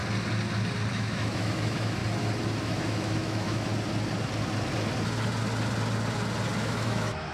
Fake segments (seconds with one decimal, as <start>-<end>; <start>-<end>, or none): 0.9-2.0; 2.6-3.7; 6.6-7.3